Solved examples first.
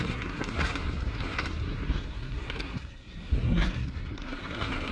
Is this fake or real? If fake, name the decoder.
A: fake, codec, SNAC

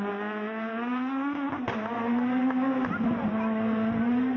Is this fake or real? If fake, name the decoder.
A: real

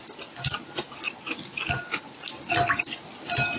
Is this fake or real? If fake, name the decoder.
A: real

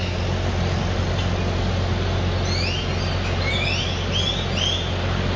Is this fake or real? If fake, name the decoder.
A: real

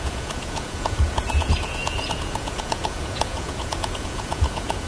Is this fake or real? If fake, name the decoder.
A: fake, vocoder, Vocos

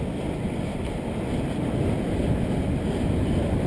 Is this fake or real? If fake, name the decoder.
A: real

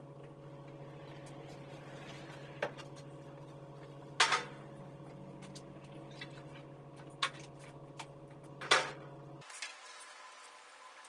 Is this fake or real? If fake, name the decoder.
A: real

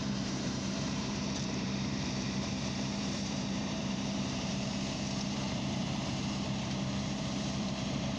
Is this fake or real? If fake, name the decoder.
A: fake, vocoder, BigVGAN v2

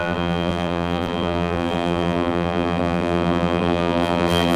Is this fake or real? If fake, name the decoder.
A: fake, vocoder, BigVGAN v2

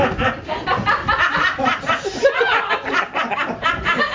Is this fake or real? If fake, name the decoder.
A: real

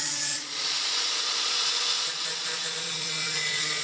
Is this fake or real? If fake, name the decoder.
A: fake, vocoder, Vocos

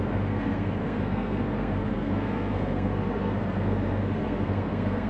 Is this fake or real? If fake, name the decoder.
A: fake, codec, SNAC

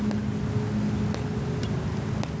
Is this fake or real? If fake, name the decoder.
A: real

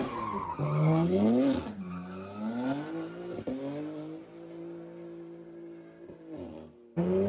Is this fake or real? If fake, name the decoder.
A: real